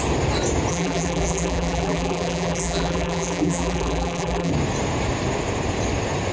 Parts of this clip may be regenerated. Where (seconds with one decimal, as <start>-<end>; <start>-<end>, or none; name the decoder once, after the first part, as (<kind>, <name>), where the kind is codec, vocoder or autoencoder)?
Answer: 0.7-4.5 (vocoder, BigVGAN v2)